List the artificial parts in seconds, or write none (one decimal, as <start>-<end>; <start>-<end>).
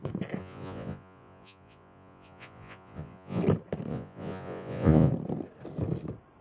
0.4-3.4; 3.9-5.1